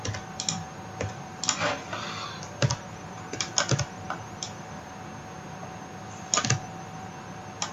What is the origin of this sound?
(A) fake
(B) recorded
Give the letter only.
B